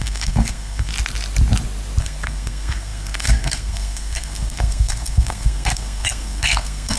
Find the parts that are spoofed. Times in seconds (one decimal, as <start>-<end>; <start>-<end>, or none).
0.0-0.9; 2.0-7.0

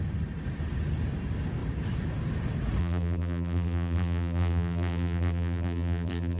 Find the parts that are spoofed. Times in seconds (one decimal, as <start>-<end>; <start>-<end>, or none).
2.8-6.4